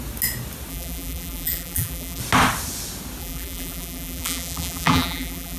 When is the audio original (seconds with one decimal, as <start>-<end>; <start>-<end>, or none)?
0.0-0.7; 2.2-3.2